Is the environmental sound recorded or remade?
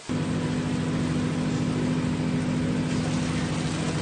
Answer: recorded